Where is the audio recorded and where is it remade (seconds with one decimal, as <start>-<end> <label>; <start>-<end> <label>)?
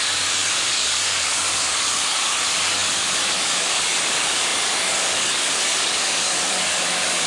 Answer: 0.0-7.3 remade